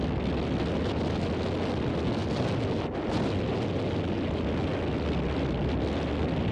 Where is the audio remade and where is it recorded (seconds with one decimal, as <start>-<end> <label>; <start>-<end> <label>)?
0.0-6.5 recorded